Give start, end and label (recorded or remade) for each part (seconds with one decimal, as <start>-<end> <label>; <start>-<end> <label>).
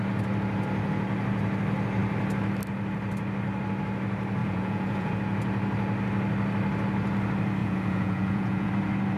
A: 0.0-4.4 recorded; 4.4-5.1 remade; 5.1-7.6 recorded; 7.6-8.7 remade; 8.7-9.2 recorded